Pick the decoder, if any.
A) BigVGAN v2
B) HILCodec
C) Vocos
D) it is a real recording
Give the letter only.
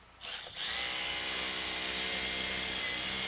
D